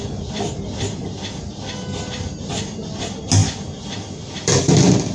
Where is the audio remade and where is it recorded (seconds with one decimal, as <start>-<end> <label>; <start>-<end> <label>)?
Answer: 0.0-5.1 recorded